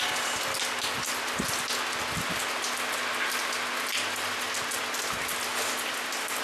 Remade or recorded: recorded